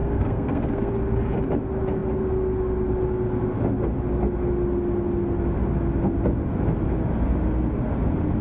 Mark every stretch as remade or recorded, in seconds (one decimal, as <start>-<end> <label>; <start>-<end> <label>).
0.0-0.9 remade; 0.9-8.4 recorded